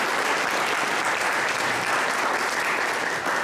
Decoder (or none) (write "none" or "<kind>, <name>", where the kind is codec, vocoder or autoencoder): none